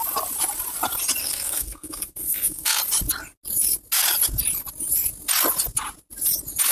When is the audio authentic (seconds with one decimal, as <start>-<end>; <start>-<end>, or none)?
0.0-1.2; 2.8-6.7